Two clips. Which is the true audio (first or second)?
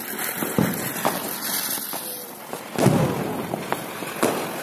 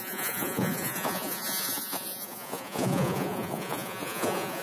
first